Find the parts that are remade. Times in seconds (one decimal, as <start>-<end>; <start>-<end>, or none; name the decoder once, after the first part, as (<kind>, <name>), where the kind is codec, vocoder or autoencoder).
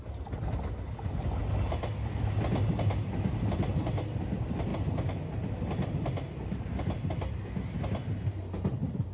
none